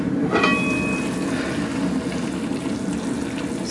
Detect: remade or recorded recorded